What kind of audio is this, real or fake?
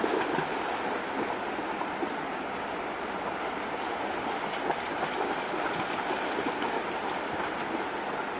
real